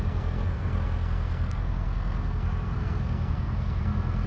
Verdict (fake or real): fake